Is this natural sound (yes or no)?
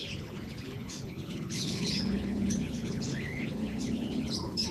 no